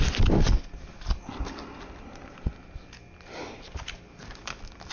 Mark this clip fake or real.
real